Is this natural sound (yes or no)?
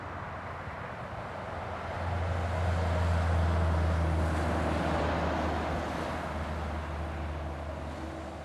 yes